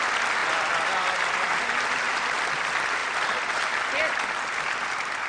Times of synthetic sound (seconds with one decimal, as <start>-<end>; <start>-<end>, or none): none